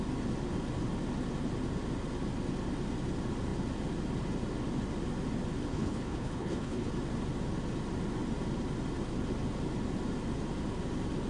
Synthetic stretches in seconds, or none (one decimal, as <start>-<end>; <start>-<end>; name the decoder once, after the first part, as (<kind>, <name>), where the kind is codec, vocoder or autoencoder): 5.7-6.9 (codec, HILCodec)